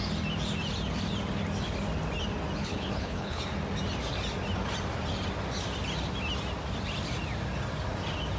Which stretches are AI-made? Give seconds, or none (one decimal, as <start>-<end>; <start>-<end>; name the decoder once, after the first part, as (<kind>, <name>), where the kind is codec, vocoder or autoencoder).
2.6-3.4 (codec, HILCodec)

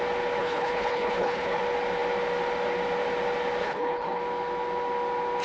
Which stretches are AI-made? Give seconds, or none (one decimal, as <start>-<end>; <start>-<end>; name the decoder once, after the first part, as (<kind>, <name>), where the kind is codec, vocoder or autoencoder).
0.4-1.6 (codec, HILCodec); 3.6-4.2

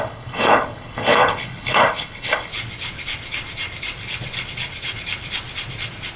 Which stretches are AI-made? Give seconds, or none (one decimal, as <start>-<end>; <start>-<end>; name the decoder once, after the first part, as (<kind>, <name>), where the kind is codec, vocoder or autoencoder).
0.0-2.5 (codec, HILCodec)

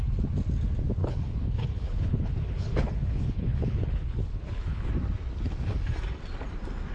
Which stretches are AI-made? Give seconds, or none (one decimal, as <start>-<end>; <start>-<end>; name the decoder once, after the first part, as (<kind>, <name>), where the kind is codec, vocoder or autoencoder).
1.0-4.9 (codec, HILCodec)

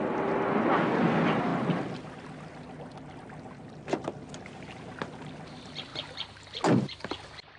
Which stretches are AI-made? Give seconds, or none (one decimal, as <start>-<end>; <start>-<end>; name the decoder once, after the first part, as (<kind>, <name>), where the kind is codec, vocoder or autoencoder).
none

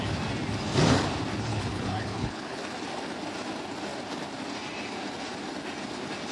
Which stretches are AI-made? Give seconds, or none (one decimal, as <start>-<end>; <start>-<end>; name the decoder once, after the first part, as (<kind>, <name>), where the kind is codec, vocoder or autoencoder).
1.5-2.6 (codec, HILCodec)

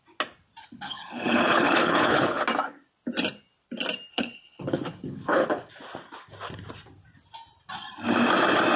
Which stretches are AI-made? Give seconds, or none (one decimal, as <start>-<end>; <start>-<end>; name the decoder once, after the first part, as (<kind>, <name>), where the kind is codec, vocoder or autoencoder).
0.6-2.4 (codec, HILCodec); 4.1-5.7

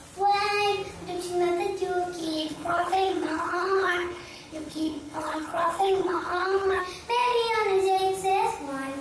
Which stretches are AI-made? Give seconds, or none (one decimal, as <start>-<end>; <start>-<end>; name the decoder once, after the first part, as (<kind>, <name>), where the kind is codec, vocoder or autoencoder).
2.2-6.8 (codec, HILCodec)